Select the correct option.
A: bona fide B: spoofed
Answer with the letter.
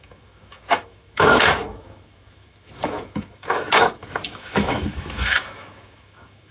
B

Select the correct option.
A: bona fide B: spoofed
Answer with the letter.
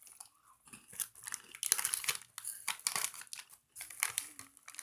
A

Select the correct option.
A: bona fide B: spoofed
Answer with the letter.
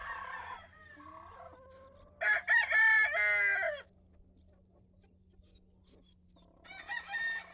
A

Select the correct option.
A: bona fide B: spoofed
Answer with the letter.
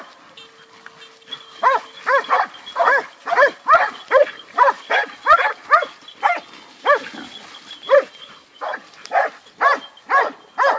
A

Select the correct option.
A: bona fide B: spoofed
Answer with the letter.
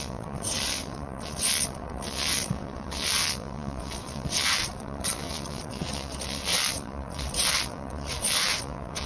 B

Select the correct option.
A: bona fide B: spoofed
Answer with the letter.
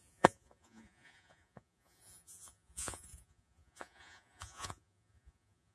B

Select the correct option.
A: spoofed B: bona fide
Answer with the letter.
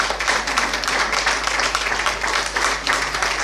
A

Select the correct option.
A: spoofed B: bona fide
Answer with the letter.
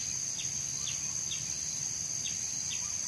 B